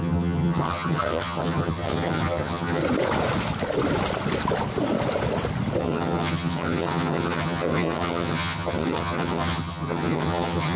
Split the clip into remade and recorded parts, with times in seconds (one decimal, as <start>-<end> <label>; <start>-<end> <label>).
0.0-2.8 remade; 2.8-5.8 recorded; 5.8-10.8 remade